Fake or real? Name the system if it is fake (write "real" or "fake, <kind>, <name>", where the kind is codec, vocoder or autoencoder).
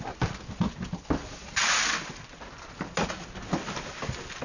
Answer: real